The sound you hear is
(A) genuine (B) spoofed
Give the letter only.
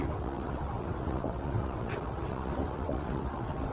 B